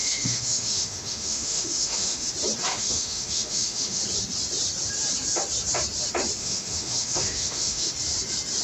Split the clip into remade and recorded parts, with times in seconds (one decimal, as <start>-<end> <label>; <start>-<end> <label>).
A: 0.0-2.3 remade; 2.3-2.7 recorded; 2.7-4.0 remade; 4.0-6.4 recorded; 6.4-7.9 remade; 7.9-8.6 recorded